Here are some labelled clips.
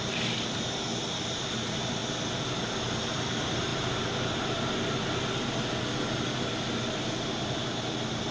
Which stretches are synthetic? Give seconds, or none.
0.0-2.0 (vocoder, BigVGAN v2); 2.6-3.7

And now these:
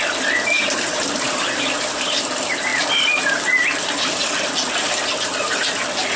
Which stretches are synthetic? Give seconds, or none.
none

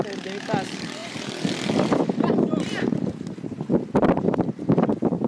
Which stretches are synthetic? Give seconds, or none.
0.0-5.3 (vocoder, BigVGAN v2)